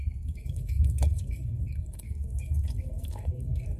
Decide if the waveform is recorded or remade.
remade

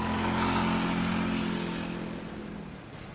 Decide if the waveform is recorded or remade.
recorded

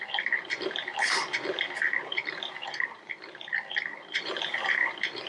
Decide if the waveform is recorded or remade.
remade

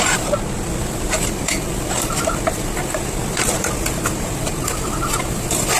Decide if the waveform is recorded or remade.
remade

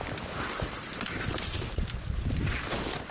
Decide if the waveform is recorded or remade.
recorded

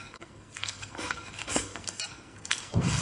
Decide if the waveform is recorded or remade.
remade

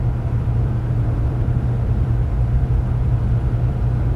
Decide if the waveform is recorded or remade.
remade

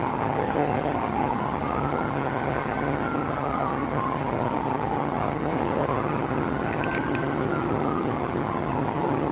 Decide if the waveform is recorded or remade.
remade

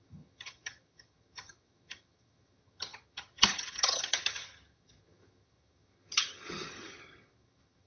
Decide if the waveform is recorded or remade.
remade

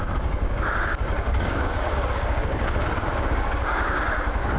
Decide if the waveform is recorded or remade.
remade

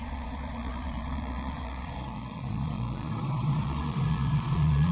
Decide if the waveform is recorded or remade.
remade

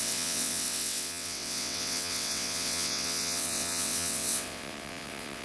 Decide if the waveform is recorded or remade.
remade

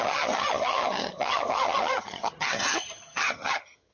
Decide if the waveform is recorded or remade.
remade